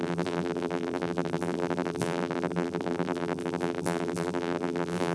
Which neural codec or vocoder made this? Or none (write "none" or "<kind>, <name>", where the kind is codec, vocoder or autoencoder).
vocoder, BigVGAN v2